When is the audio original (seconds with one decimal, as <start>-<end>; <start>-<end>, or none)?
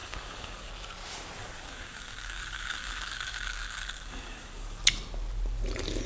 0.7-1.4; 4.8-6.1